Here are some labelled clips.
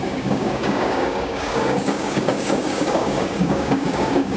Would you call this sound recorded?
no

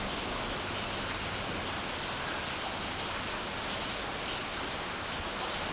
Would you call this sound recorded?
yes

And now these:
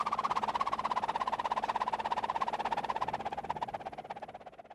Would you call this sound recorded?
yes